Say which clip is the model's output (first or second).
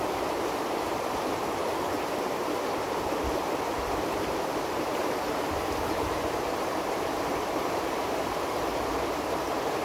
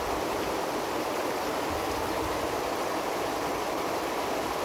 first